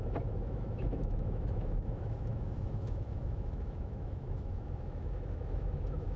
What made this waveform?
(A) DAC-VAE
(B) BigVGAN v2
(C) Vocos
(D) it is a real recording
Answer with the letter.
A